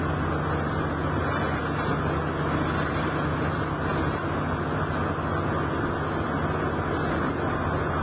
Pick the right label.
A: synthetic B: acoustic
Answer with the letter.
B